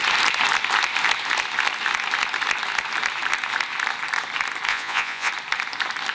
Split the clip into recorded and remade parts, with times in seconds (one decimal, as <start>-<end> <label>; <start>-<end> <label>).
0.0-4.7 recorded; 4.7-5.3 remade; 5.3-6.1 recorded